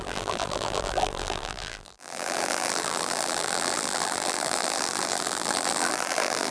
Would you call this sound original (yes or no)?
no